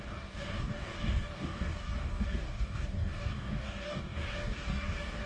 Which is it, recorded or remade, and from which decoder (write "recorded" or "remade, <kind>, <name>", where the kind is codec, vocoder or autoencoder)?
remade, codec, DAC